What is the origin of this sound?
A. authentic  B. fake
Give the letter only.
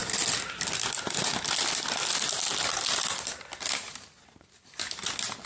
A